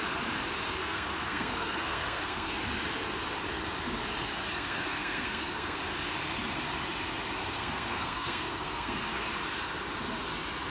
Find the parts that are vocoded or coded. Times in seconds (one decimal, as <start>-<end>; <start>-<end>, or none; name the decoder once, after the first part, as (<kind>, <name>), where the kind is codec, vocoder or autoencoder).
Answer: 0.8-2.5 (codec, SNAC); 4.5-5.8; 7.4-9.3